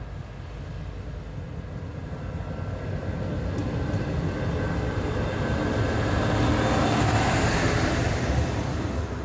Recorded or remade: recorded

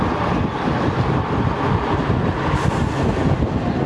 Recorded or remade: recorded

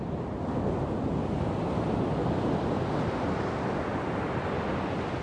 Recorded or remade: recorded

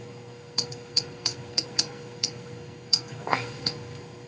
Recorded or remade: remade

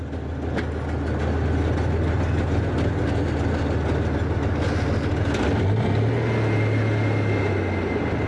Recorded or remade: recorded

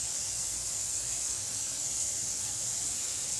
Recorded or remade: remade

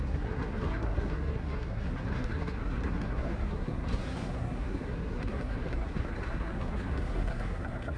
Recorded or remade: remade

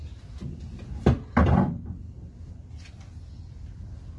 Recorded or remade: recorded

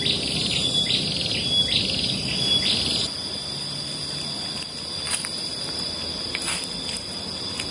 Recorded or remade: recorded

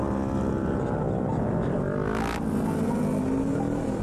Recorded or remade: recorded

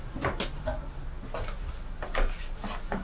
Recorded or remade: recorded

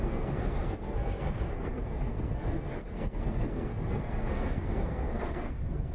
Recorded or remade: remade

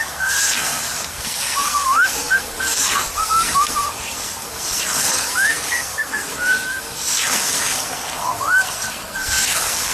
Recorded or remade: remade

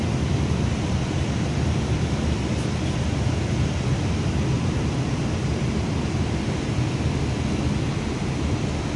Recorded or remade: recorded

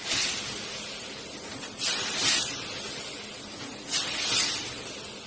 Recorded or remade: recorded